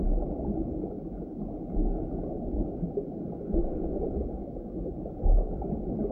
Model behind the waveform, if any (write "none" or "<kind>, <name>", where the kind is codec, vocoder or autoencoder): none